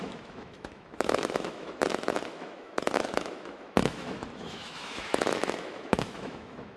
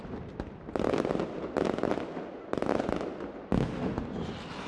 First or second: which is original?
second